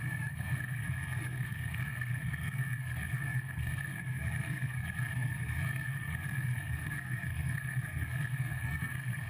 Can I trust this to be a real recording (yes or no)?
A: no